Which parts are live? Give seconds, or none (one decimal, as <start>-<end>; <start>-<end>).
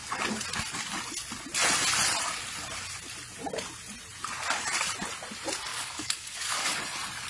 0.0-5.7; 6.8-7.3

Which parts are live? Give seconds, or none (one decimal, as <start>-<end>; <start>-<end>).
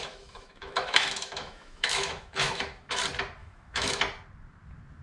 3.0-3.4; 4.0-5.0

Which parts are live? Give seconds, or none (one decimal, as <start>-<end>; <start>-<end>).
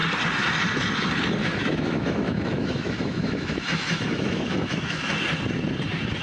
0.0-1.4; 5.1-6.2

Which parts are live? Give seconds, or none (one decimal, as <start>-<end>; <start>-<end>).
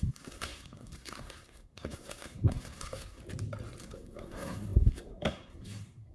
3.2-3.8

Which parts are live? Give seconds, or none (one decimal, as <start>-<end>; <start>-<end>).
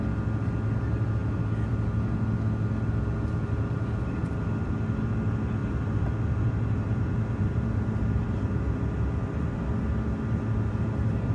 0.0-5.6; 9.7-11.3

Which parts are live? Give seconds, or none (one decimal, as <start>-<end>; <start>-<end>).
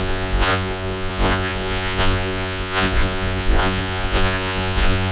none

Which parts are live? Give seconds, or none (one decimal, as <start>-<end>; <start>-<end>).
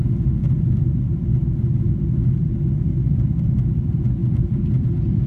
0.0-5.3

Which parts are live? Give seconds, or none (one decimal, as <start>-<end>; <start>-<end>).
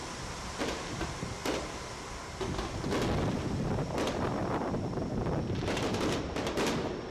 0.0-7.1